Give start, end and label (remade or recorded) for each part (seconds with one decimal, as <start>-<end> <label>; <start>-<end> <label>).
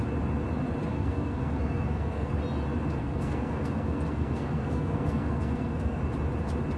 0.0-0.9 recorded; 0.9-2.3 remade; 2.3-3.0 recorded; 3.0-6.0 remade; 6.0-6.8 recorded